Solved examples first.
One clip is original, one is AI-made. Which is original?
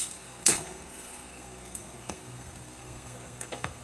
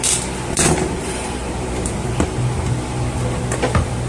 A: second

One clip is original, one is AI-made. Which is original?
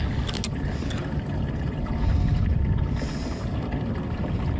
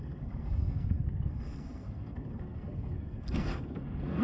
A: first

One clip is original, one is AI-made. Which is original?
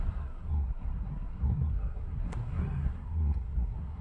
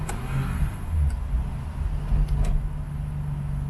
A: second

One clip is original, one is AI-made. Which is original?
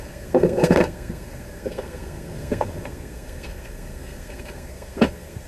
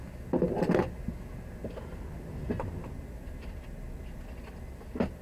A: second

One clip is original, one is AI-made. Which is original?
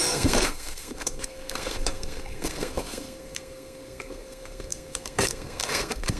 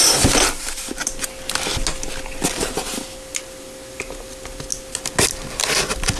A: second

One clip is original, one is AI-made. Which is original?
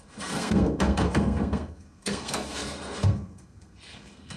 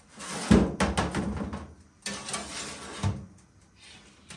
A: second